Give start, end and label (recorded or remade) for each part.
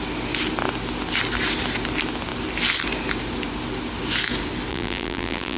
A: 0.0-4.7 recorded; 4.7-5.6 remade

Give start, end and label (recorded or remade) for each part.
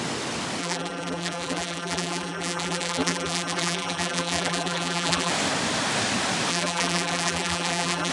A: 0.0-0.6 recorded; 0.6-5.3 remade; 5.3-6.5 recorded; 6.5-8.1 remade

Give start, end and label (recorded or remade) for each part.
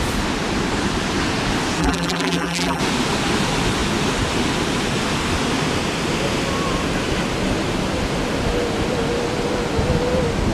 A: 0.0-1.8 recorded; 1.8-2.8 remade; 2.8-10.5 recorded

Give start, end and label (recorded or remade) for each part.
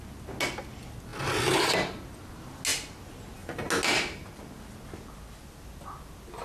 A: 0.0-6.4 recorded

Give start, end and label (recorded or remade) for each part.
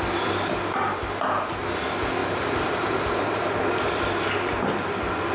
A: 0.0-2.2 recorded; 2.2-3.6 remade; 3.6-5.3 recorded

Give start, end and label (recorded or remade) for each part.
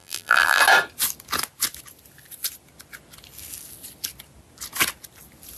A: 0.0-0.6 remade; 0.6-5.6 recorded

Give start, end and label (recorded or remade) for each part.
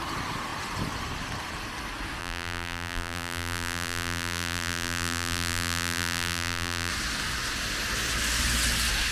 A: 0.0-2.2 recorded; 2.2-6.9 remade; 6.9-9.1 recorded